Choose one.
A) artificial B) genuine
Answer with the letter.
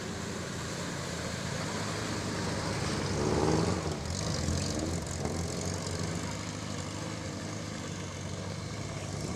B